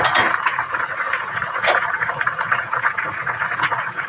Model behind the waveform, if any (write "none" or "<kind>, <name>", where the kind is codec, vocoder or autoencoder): vocoder, Vocos